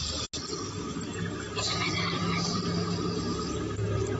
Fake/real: real